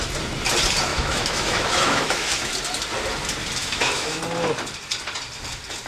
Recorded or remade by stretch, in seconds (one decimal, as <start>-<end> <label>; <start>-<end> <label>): 0.0-0.9 recorded; 0.9-2.5 remade; 2.5-3.6 recorded; 3.6-4.2 remade; 4.2-5.9 recorded